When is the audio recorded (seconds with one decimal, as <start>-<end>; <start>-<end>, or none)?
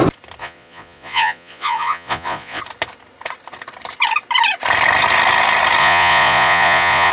0.0-0.4; 2.6-5.8